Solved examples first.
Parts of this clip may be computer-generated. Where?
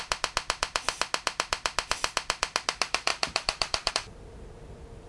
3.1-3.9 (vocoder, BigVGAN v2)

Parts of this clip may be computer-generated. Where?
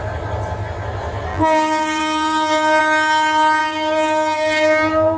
1.3-2.8 (vocoder, BigVGAN v2); 3.6-5.2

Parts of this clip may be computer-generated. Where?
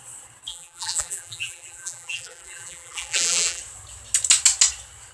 0.5-3.6 (vocoder, BigVGAN v2)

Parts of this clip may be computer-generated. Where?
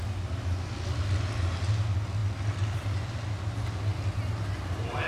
2.2-3.3 (vocoder, BigVGAN v2)